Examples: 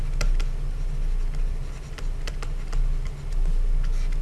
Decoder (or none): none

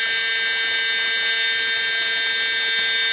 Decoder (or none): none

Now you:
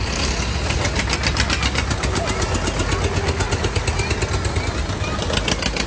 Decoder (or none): none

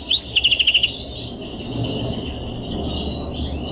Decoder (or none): none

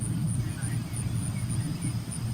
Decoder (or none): none